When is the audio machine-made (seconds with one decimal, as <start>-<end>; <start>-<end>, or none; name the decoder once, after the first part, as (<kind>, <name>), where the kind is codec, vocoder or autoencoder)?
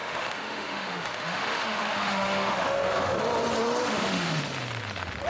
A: 0.0-3.2 (autoencoder, DAC-VAE); 3.8-4.4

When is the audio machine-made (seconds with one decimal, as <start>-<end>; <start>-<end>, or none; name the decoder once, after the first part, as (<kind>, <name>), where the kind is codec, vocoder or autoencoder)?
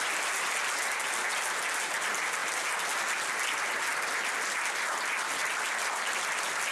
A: none